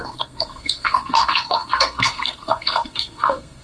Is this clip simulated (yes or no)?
yes